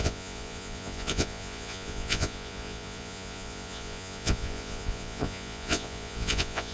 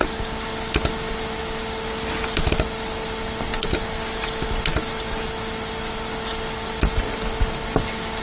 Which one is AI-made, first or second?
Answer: first